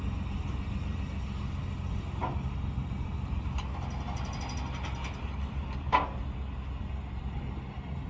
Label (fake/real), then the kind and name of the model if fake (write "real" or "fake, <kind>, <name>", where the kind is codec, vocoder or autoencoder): real